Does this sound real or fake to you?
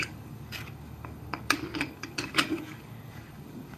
fake